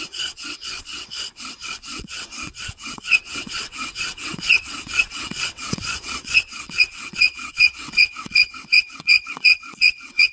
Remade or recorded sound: remade